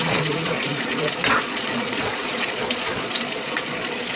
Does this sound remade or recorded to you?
remade